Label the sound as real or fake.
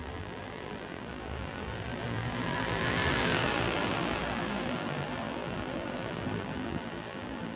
fake